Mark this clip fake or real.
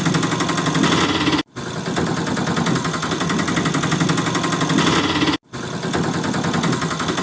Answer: real